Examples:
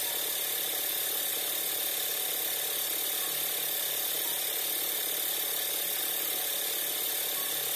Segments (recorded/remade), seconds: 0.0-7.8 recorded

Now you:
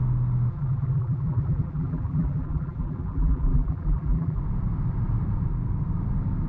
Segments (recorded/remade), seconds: 0.0-0.5 recorded; 0.5-4.4 remade; 4.4-6.5 recorded